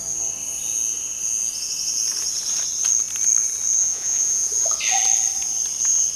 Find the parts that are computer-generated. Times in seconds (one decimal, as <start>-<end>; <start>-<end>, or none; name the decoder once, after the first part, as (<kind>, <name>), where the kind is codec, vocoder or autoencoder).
3.8-4.5 (vocoder, Vocos)